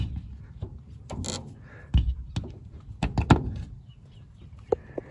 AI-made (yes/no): no